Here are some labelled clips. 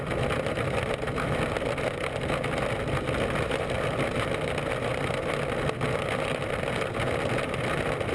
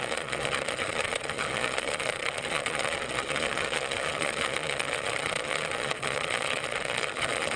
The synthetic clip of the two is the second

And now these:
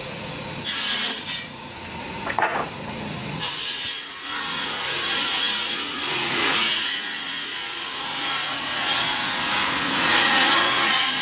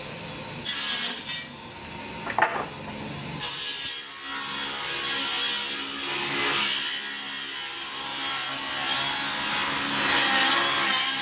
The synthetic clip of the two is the first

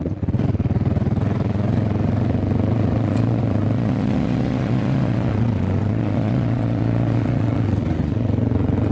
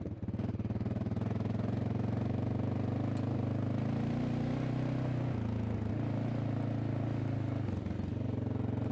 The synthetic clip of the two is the first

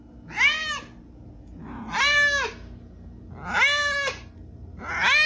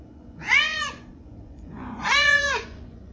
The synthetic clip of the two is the second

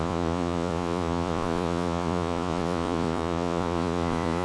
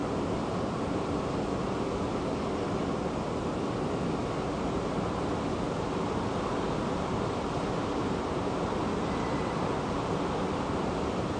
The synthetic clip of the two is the first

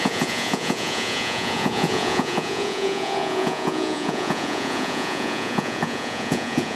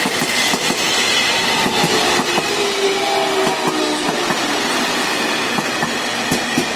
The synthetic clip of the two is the first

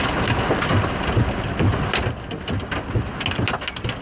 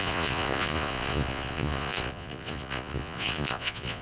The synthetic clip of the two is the second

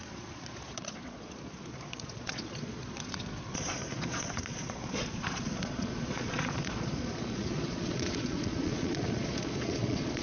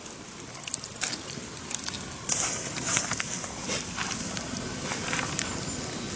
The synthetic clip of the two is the first